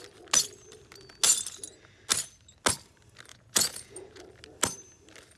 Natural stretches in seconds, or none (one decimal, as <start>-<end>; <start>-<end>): 0.0-3.3; 4.2-5.4